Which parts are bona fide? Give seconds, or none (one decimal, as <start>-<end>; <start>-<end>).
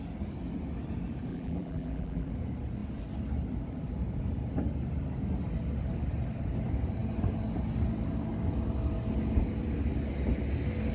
0.0-1.3; 2.3-10.9